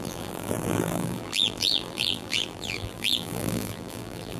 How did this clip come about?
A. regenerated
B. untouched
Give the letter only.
A